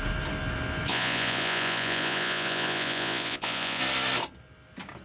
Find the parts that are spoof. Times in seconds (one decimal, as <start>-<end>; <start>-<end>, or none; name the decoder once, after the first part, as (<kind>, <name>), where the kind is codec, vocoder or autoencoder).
0.9-3.8 (vocoder, Vocos)